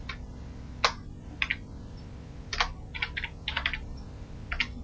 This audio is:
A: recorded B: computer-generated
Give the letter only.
A